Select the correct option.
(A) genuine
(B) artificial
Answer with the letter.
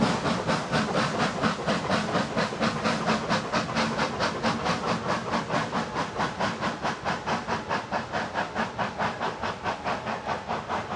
A